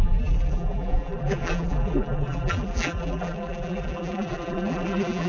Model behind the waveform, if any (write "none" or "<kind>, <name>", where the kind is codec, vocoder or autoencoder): vocoder, BigVGAN v2